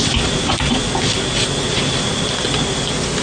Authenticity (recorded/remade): recorded